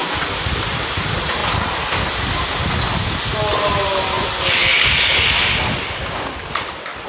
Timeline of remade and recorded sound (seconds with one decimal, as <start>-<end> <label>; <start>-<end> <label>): 0.0-7.1 recorded